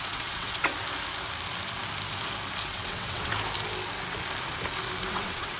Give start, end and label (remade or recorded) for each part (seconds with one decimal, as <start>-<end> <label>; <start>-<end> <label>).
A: 0.0-0.7 remade; 0.7-2.6 recorded; 2.6-3.3 remade; 3.3-5.1 recorded; 5.1-5.6 remade